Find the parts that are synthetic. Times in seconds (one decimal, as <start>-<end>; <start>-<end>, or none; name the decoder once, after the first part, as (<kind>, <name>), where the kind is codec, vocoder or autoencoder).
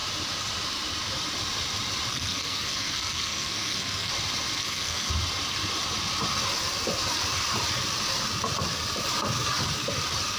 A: 2.1-4.1 (codec, SNAC); 4.6-5.1